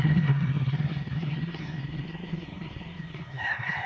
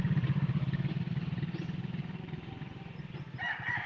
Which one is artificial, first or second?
first